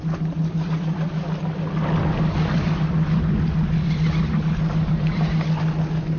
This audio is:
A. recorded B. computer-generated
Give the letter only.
A